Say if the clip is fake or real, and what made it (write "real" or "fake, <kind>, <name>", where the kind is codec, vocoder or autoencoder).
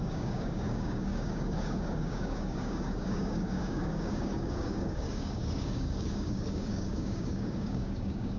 fake, codec, DAC